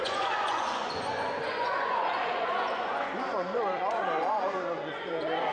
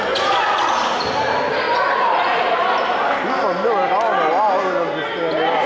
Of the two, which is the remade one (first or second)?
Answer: first